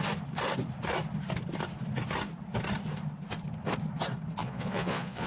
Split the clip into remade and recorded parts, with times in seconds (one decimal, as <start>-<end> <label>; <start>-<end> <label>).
0.0-4.4 recorded; 4.4-5.3 remade